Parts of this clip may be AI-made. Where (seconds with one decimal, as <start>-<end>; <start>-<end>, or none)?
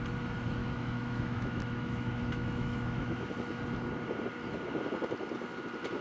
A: 0.6-3.3